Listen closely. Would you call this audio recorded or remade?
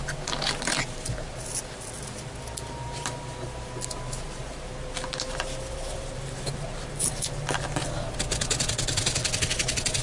recorded